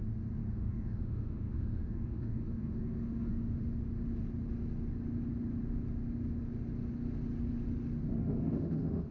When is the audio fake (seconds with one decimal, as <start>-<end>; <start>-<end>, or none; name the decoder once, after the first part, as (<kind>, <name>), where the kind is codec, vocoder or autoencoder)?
0.4-3.8 (autoencoder, DAC-VAE); 8.2-9.1